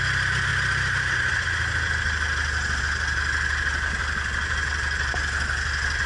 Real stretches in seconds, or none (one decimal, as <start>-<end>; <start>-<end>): 0.0-4.0; 5.1-6.1